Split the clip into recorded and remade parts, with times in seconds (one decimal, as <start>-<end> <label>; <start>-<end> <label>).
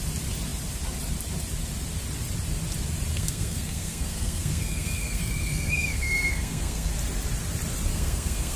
0.0-3.1 recorded; 3.1-6.9 remade; 6.9-7.9 recorded; 7.9-8.6 remade